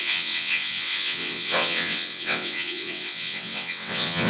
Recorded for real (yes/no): no